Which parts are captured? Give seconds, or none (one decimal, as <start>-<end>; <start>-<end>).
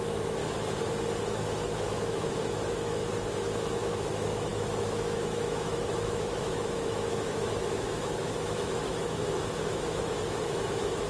0.4-1.2; 3.0-3.6